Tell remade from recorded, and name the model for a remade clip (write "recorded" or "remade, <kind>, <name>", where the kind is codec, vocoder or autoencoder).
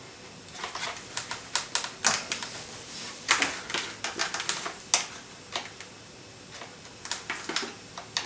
recorded